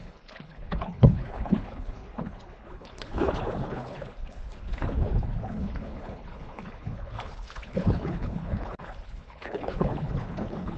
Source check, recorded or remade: remade